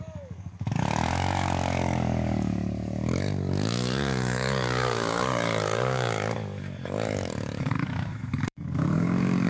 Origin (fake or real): fake